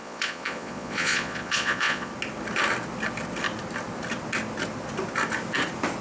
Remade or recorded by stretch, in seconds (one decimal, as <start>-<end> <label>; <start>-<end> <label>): 0.0-2.1 remade; 2.1-6.0 recorded

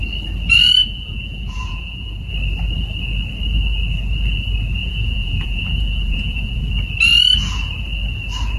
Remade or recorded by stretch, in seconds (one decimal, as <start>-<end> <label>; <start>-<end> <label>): 0.0-0.8 recorded; 0.8-2.3 remade; 2.3-4.8 recorded; 4.8-6.6 remade; 6.6-8.6 recorded

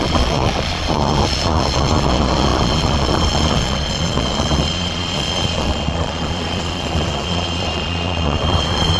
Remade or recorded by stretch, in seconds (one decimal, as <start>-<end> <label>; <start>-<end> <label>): 0.0-9.0 remade